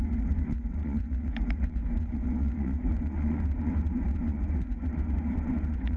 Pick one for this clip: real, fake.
fake